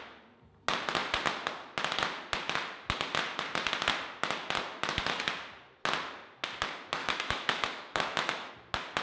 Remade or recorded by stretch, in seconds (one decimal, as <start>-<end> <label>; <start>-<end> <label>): 0.0-7.0 recorded; 7.0-8.5 remade; 8.5-9.0 recorded